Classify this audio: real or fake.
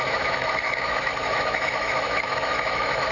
fake